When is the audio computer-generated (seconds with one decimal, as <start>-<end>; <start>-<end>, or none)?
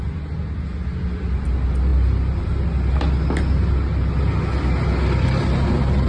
none